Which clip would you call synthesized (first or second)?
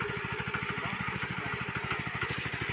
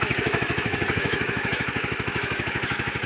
second